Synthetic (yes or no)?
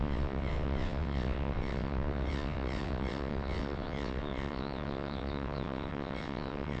yes